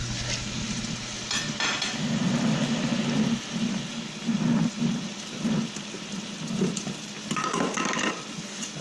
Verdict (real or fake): real